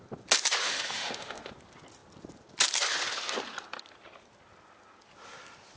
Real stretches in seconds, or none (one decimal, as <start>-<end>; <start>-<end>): 0.0-0.6; 1.5-5.8

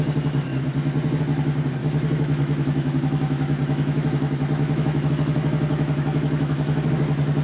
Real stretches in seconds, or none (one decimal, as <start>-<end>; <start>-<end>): 0.0-1.8; 5.1-5.7; 6.9-7.4